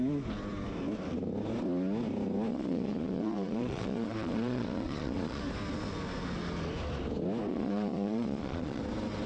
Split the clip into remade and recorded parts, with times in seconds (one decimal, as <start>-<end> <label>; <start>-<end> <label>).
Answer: 0.0-2.5 recorded; 2.5-5.4 remade; 5.4-7.5 recorded; 7.5-8.8 remade; 8.8-9.3 recorded